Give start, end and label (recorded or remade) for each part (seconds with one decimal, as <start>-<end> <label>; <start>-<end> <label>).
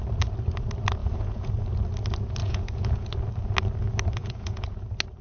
0.0-1.0 recorded; 1.0-1.5 remade; 1.5-2.4 recorded; 2.4-3.1 remade; 3.1-4.2 recorded; 4.2-4.8 remade; 4.8-5.2 recorded